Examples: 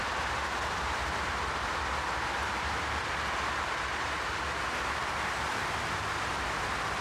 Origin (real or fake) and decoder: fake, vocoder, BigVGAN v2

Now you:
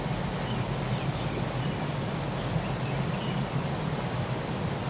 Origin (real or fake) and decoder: real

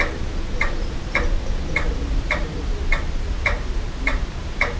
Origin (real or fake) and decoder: fake, vocoder, BigVGAN v2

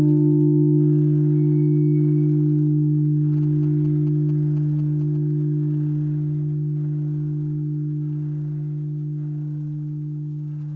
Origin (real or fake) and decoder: real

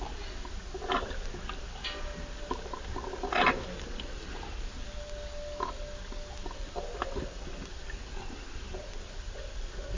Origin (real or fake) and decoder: real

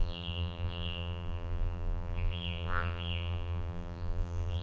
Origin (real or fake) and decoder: fake, vocoder, BigVGAN v2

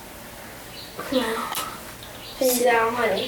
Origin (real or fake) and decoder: real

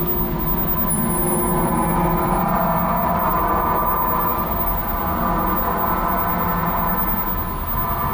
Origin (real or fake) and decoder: real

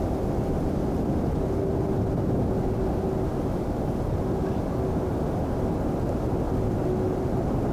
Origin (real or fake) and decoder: real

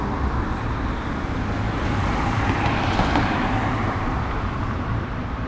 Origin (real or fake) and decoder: fake, vocoder, BigVGAN v2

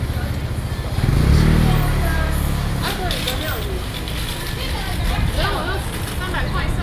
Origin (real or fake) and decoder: real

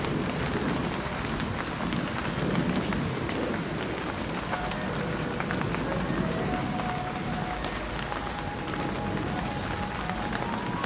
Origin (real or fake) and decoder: real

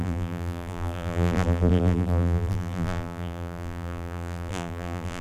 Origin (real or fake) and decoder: fake, vocoder, BigVGAN v2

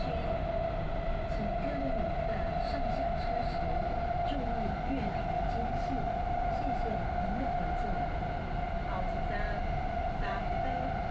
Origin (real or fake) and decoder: real